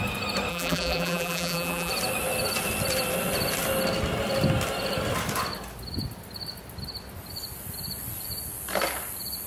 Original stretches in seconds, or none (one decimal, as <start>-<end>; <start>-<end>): 0.0-0.5; 1.9-9.5